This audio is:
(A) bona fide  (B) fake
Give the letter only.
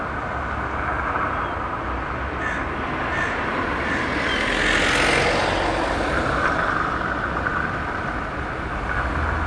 A